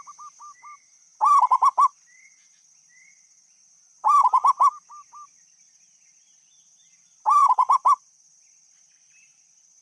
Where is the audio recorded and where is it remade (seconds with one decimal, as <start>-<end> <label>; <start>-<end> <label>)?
0.0-7.4 recorded; 7.4-8.2 remade; 8.2-9.8 recorded